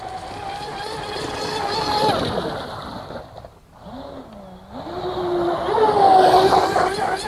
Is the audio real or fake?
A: real